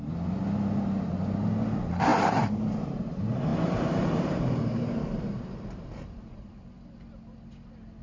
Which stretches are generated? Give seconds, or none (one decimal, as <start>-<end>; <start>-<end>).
2.1-3.0; 3.5-6.7